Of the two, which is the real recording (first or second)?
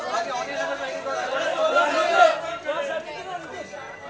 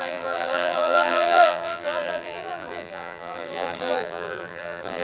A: first